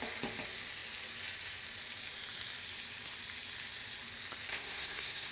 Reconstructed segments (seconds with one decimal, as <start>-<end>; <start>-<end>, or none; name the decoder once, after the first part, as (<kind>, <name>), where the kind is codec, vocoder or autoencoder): 4.5-5.3 (codec, SNAC)